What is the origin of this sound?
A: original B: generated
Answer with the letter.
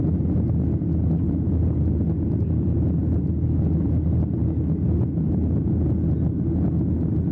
A